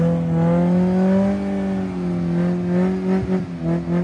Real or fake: real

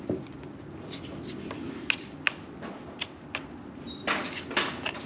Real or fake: real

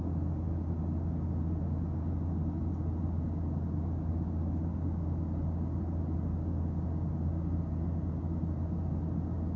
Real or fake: real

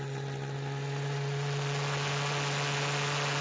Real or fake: real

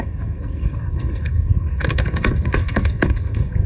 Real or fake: fake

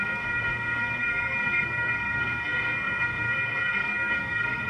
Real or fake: fake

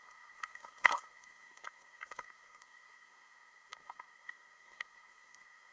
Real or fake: fake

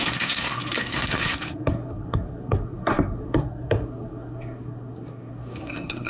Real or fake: fake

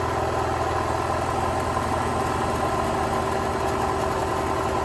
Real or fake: real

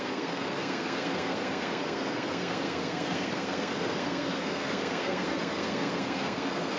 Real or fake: fake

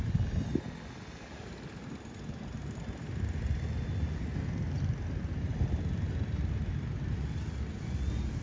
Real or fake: real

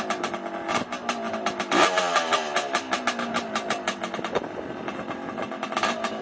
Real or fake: real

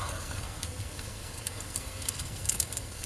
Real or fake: fake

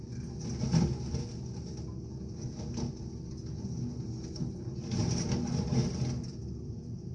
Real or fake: real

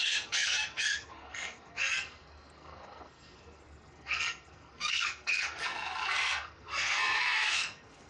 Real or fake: fake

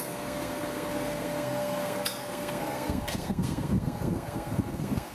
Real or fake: fake